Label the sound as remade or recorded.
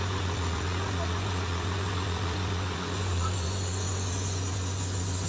remade